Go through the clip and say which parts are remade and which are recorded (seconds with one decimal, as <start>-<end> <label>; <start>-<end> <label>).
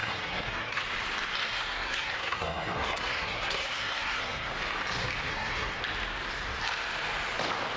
0.0-0.8 remade; 0.8-1.4 recorded; 1.4-4.5 remade; 4.5-5.3 recorded; 5.3-5.8 remade; 5.8-7.8 recorded